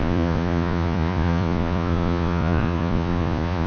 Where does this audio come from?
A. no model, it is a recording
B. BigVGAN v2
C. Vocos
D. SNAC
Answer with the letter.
C